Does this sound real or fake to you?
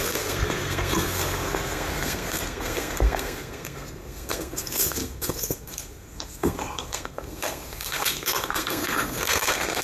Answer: fake